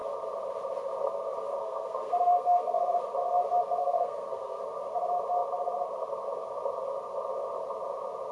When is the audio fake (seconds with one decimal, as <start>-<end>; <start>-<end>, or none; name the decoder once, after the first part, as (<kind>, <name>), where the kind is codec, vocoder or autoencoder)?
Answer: 1.6-3.0 (codec, SNAC); 3.8-4.6